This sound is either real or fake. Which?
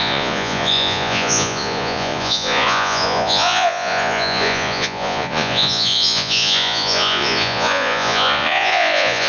fake